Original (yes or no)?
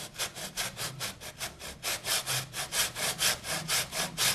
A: yes